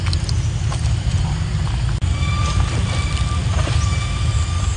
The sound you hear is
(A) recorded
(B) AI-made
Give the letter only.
A